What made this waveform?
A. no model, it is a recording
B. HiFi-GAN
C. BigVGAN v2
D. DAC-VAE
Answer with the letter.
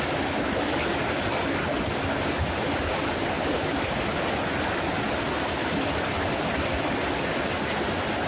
A